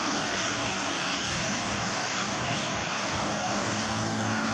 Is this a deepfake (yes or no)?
yes